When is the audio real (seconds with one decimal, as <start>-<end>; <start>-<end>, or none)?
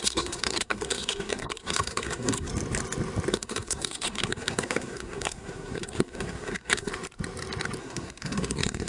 2.5-3.3; 6.9-7.8